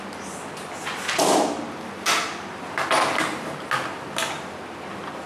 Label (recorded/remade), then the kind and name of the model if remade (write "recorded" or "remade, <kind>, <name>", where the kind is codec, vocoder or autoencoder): recorded